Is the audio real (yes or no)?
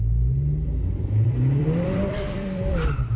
no